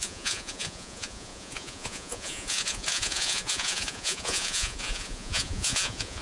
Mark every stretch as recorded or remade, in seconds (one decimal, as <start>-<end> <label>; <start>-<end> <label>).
0.0-6.2 remade